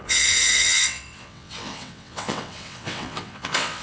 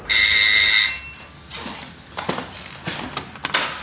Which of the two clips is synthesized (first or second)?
first